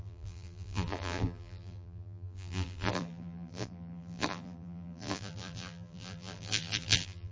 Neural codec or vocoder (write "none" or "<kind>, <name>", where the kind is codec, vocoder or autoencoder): vocoder, BigVGAN v2